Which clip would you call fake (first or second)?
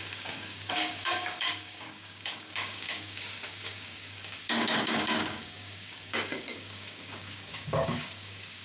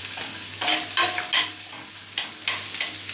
first